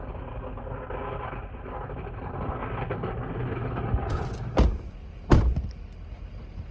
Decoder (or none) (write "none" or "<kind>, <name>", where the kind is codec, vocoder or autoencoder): none